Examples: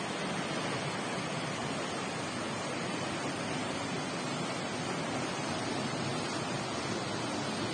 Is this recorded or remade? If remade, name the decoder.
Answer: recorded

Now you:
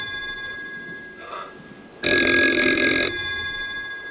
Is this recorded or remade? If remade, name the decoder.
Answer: recorded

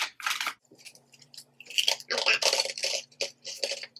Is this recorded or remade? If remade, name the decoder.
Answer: remade, vocoder, BigVGAN v2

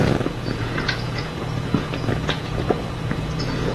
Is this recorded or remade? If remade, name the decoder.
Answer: remade, vocoder, Vocos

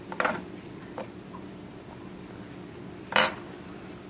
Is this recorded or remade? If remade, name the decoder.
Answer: recorded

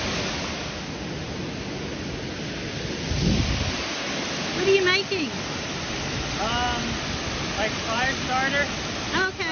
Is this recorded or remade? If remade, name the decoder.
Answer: recorded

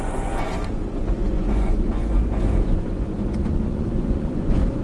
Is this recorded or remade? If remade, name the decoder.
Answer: remade, vocoder, Vocos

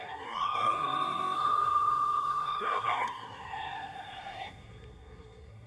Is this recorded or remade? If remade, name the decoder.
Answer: remade, codec, SNAC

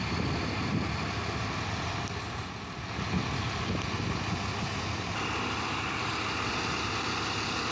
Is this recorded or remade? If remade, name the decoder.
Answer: recorded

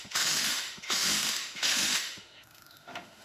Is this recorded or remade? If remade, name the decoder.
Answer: remade, autoencoder, DAC-VAE